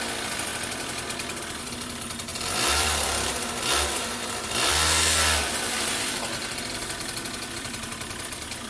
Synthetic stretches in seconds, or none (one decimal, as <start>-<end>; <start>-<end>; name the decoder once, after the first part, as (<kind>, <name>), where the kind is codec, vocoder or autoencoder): 0.0-0.5 (vocoder, BigVGAN v2); 1.6-6.4; 7.6-8.7

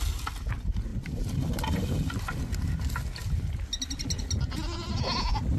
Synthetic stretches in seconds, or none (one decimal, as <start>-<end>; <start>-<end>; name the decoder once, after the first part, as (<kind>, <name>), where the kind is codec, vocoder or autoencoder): none

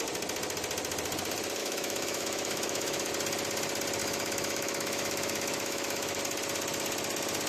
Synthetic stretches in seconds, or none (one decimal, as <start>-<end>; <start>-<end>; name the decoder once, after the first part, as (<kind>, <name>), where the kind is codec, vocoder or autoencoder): 1.6-3.1 (autoencoder, DAC-VAE); 4.0-6.2

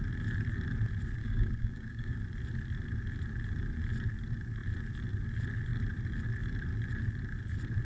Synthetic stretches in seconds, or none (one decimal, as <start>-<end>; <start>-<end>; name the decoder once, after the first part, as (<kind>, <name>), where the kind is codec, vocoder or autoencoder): 1.2-2.2 (codec, DAC)

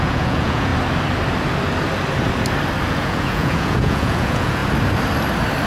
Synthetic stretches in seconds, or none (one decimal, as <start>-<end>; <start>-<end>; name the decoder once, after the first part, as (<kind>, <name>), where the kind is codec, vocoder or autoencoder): 0.0-0.7 (vocoder, Vocos); 2.9-4.6

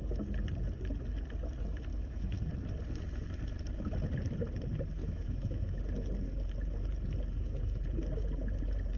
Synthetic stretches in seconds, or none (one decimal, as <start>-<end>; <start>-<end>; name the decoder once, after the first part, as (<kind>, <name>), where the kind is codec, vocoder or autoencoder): 1.9-2.5 (autoencoder, DAC-VAE); 5.0-5.8

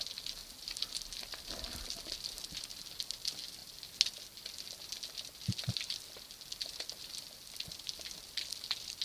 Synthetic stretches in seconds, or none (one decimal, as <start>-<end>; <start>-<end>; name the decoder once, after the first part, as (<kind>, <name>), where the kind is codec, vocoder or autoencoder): none

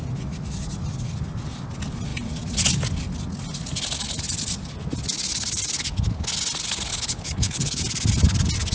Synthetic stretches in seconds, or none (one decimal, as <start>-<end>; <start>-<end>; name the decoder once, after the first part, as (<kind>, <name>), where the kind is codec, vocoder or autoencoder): 6.9-7.8 (codec, HILCodec)